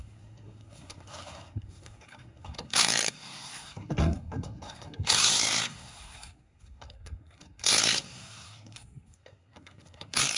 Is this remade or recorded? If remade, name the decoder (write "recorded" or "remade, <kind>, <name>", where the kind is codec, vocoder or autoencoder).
remade, codec, SNAC